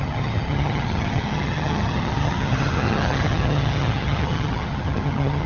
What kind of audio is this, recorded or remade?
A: remade